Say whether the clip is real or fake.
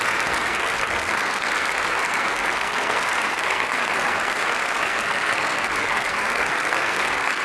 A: fake